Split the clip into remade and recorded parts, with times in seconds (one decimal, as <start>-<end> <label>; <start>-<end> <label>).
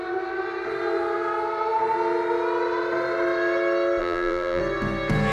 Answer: 0.0-4.0 recorded; 4.0-4.6 remade; 4.6-5.3 recorded